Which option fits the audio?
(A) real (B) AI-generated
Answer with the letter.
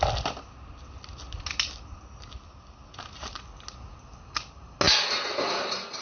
A